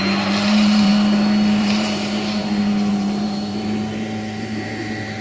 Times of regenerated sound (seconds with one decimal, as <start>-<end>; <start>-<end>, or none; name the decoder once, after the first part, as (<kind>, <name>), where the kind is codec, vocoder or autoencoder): 0.0-0.9 (vocoder, BigVGAN v2); 1.6-2.4; 2.9-5.2